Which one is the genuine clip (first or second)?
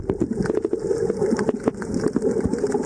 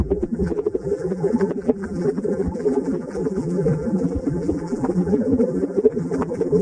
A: first